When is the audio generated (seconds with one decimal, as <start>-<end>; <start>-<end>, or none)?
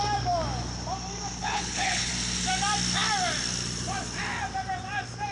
1.4-2.1